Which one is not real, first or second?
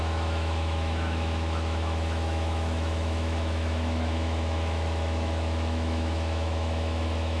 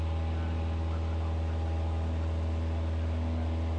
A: first